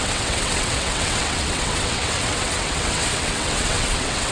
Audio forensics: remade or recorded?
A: remade